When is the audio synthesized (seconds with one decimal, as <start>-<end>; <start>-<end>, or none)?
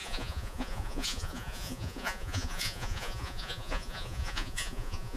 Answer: 0.0-5.2